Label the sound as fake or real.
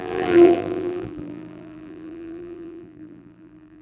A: fake